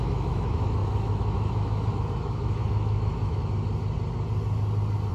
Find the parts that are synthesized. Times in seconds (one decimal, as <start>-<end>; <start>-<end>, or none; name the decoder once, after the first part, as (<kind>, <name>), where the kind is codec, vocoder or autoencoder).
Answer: 0.0-3.4 (autoencoder, DAC-VAE)